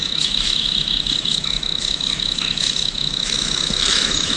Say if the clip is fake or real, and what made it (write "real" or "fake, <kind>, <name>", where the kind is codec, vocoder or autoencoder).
fake, autoencoder, DAC-VAE